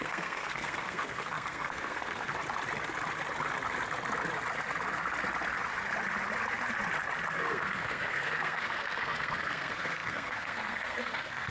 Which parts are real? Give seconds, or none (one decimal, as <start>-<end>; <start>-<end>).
2.3-7.3